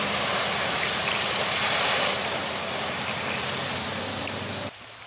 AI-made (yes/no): yes